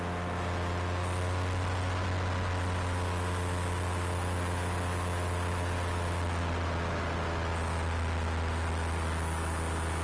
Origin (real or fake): real